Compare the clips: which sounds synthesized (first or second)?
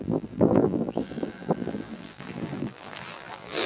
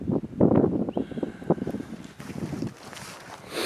first